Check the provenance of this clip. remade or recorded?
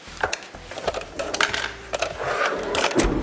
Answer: remade